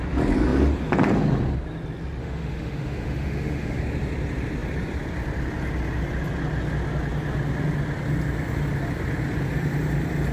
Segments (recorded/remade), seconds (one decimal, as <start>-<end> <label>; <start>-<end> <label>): 0.0-2.2 recorded; 2.2-3.8 remade; 3.8-10.3 recorded